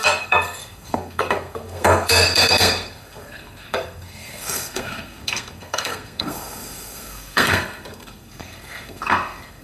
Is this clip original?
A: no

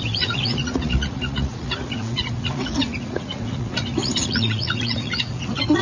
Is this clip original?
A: no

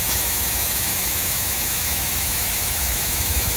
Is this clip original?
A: no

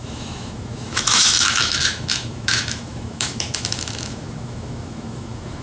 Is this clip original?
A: no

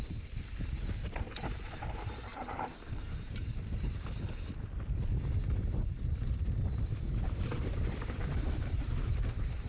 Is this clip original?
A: no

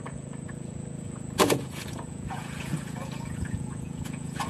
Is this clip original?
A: no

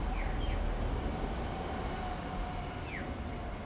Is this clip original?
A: yes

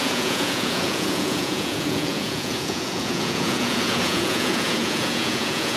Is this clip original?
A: no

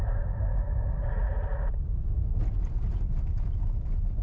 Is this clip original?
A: yes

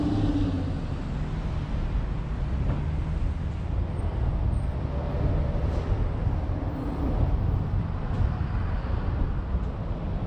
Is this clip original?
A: yes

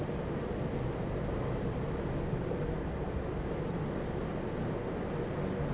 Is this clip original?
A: yes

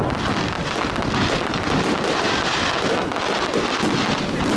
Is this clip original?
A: yes